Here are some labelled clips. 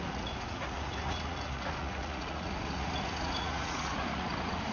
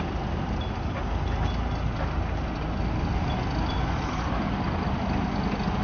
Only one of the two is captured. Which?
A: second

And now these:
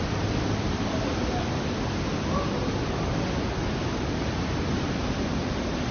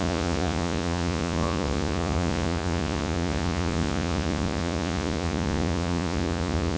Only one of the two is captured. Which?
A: first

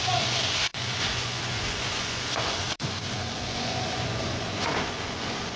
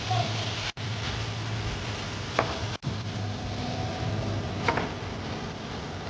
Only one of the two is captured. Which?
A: second